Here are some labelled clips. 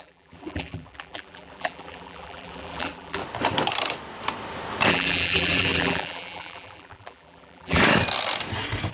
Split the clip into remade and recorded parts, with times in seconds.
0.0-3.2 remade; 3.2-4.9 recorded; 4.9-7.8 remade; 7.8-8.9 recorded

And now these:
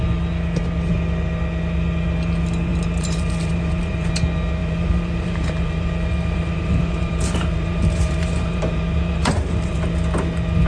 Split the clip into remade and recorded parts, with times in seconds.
0.0-2.7 recorded; 2.7-4.1 remade; 4.1-4.6 recorded; 4.6-9.8 remade; 9.8-10.7 recorded

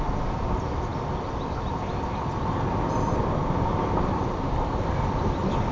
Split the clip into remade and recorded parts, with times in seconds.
0.0-5.7 remade

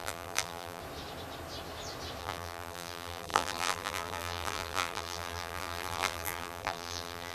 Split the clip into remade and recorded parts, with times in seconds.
0.0-0.8 remade; 0.8-2.2 recorded; 2.2-7.3 remade

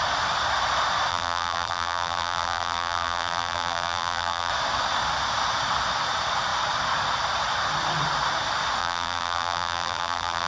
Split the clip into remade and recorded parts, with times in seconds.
0.0-1.1 recorded; 1.1-4.5 remade; 4.5-8.8 recorded; 8.8-10.5 remade

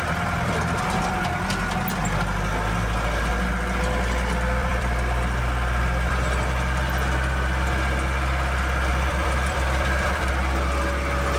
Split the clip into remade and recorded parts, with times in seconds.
0.0-4.6 recorded; 4.6-6.1 remade; 6.1-8.9 recorded; 8.9-10.3 remade; 10.3-11.4 recorded

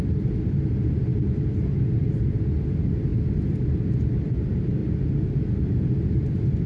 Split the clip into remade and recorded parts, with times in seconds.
0.0-3.1 remade; 3.1-3.6 recorded; 3.6-4.8 remade; 4.8-5.4 recorded; 5.4-6.7 remade

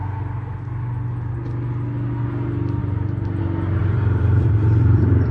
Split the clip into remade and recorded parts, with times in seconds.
0.0-2.8 recorded; 2.8-3.4 remade; 3.4-3.8 recorded; 3.8-5.3 remade